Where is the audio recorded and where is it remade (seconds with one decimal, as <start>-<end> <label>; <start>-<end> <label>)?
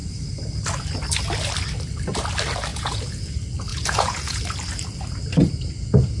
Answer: 0.0-2.7 recorded; 2.7-3.3 remade; 3.3-3.7 recorded; 3.7-4.4 remade; 4.4-6.2 recorded